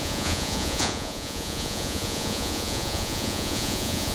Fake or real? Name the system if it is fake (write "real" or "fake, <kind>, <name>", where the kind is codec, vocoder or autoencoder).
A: fake, vocoder, Vocos